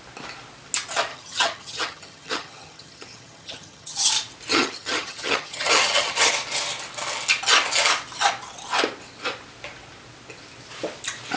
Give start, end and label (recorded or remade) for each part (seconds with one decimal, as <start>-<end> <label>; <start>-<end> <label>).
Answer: 0.0-1.1 recorded; 1.1-4.1 remade; 4.1-4.5 recorded; 4.5-6.3 remade; 6.3-11.4 recorded